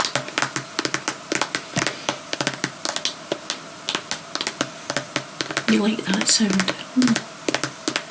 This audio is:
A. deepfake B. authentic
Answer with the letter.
B